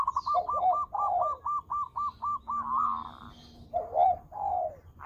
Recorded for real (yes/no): yes